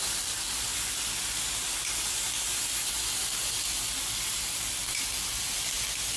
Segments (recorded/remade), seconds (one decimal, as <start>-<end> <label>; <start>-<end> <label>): 0.0-6.2 recorded